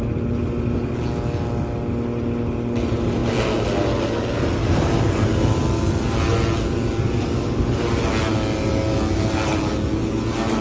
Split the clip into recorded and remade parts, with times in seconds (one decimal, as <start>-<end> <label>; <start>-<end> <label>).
0.0-10.6 recorded